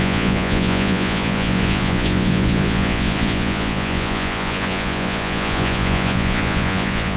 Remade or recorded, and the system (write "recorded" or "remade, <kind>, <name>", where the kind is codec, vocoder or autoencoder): remade, vocoder, Vocos